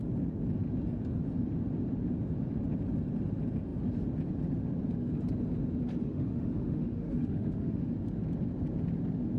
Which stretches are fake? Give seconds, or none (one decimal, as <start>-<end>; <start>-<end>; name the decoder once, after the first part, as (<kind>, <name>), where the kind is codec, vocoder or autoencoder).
6.0-7.9 (autoencoder, DAC-VAE)